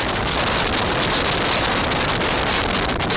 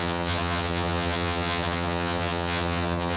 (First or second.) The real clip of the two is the first